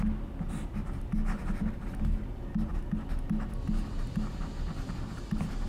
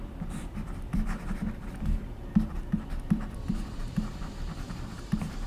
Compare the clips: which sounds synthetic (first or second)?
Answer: second